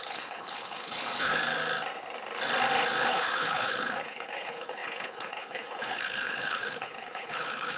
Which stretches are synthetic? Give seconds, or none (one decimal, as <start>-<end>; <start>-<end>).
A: 0.0-1.3; 3.1-7.8